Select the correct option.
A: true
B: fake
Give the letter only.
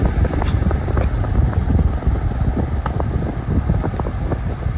A